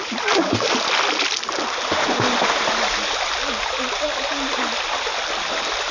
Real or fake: real